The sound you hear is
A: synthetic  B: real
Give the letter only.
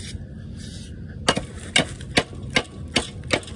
B